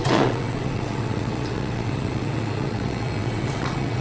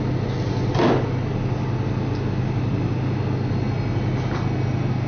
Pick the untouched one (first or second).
second